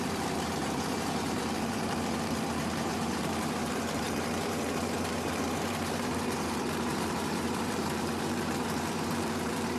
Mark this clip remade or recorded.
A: remade